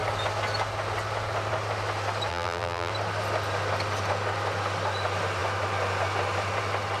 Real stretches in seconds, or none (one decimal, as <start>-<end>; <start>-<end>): 0.0-2.3; 2.9-7.0